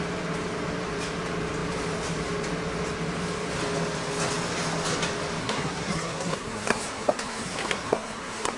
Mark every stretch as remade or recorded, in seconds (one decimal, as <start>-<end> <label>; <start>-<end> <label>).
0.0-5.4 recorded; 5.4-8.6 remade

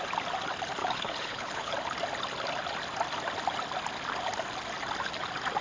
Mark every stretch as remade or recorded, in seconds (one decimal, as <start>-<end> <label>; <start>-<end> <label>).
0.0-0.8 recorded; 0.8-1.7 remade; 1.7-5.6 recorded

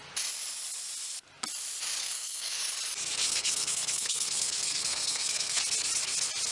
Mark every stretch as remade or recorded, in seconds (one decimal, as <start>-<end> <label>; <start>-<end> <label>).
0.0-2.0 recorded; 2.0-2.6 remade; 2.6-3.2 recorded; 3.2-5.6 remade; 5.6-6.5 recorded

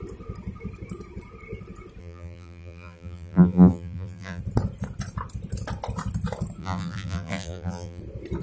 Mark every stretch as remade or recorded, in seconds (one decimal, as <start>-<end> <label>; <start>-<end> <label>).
0.0-2.0 recorded; 2.0-4.4 remade; 4.4-6.6 recorded; 6.6-8.0 remade; 8.0-8.4 recorded

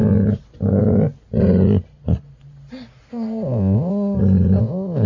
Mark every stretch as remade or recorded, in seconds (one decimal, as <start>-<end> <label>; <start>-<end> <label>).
0.0-3.1 recorded; 3.1-3.9 remade; 3.9-4.6 recorded; 4.6-5.1 remade